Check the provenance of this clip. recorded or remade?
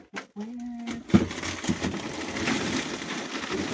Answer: recorded